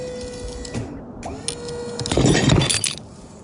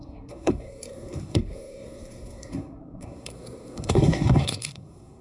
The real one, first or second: first